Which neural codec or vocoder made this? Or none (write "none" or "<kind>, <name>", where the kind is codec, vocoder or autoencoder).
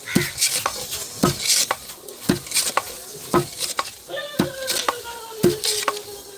none